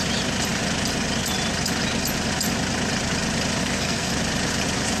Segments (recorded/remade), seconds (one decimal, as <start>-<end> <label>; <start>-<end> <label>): 0.0-3.6 recorded; 3.6-4.1 remade; 4.1-5.0 recorded